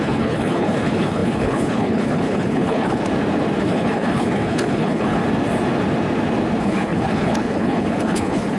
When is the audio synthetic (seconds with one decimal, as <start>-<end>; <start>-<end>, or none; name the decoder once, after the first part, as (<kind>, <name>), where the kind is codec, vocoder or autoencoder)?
0.0-3.0 (codec, HILCodec); 3.6-5.2; 6.6-8.6